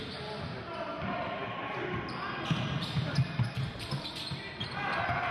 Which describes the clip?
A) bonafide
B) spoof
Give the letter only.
A